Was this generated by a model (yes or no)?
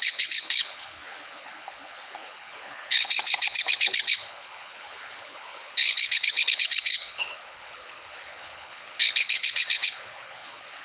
yes